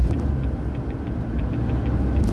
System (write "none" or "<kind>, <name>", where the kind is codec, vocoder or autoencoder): none